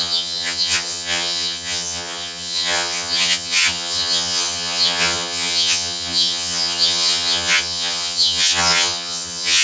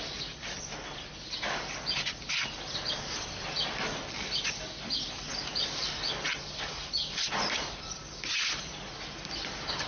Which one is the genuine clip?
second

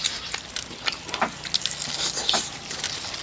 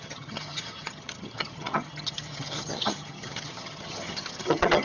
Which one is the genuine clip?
first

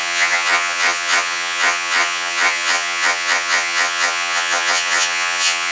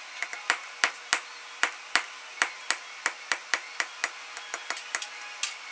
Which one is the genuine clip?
second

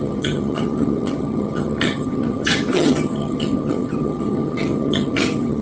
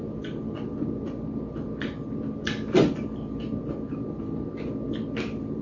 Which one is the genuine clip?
second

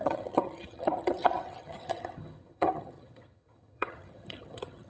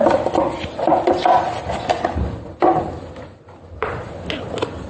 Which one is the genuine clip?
second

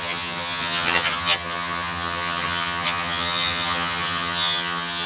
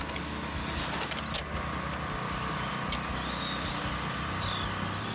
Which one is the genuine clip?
second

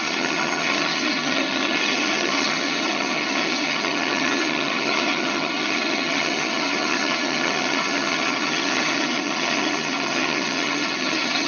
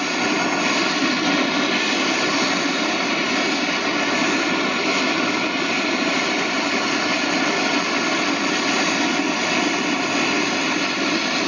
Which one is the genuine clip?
second